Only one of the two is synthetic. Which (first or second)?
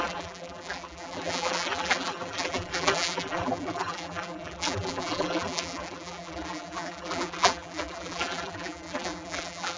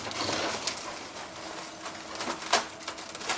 first